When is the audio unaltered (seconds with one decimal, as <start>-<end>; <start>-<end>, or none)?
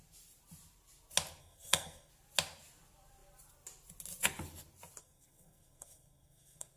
0.0-1.4; 2.1-5.0